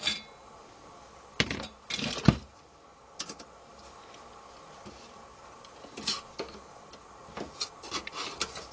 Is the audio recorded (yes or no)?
yes